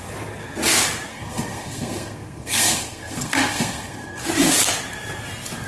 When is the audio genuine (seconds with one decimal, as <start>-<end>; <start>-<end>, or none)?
0.0-1.1; 4.2-5.7